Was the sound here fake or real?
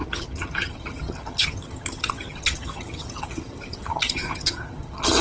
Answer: fake